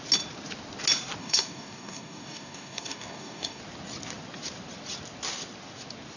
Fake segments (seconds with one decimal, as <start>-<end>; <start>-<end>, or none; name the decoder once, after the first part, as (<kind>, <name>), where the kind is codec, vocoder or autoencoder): 1.2-3.6 (codec, DAC)